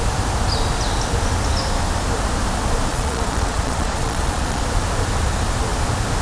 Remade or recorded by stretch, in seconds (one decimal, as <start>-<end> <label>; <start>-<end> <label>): 0.0-2.9 recorded; 2.9-4.6 remade; 4.6-6.2 recorded